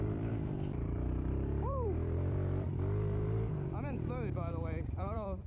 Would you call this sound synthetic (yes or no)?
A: yes